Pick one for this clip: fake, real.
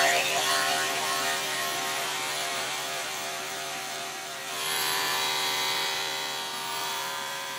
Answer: fake